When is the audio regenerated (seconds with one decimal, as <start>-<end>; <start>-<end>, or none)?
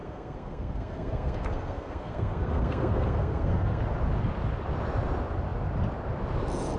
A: 0.0-3.8